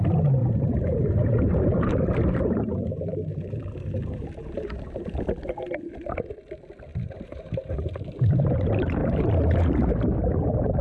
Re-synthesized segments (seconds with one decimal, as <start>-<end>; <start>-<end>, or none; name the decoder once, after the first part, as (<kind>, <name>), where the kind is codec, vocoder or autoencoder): 0.4-5.3 (vocoder, BigVGAN v2); 6.9-8.6; 9.0-9.9